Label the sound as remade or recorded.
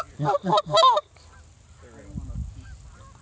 recorded